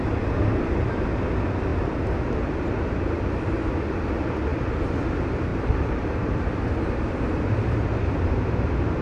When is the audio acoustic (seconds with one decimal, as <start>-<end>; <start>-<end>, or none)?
0.0-5.5; 6.7-9.0